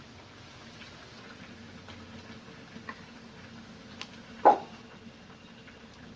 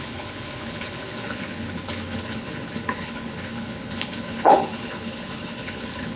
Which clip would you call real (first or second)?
first